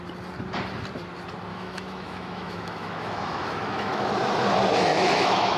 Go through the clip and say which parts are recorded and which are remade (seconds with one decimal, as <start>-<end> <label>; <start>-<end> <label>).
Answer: 0.0-1.5 recorded; 1.5-4.1 remade; 4.1-4.9 recorded; 4.9-5.6 remade